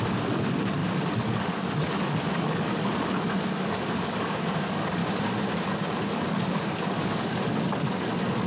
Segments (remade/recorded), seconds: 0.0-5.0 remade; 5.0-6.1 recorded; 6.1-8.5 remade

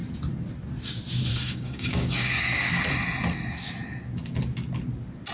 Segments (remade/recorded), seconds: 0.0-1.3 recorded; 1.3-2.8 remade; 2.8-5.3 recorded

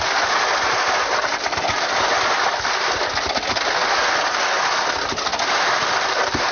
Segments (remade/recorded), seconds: 0.0-6.5 recorded